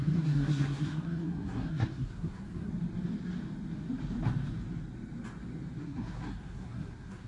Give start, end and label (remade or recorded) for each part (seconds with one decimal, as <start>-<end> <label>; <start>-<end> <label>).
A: 0.0-2.7 remade; 2.7-5.8 recorded; 5.8-7.3 remade